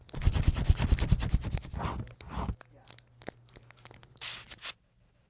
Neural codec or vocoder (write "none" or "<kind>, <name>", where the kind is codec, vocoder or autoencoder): none